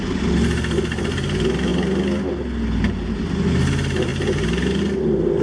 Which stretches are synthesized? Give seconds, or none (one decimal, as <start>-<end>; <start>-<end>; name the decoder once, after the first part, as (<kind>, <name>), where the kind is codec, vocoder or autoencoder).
none